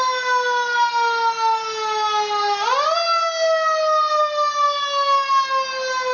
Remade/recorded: recorded